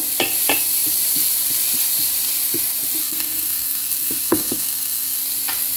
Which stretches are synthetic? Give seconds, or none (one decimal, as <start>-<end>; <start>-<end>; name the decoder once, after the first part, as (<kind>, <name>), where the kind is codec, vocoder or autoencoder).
3.0-5.2 (codec, SNAC)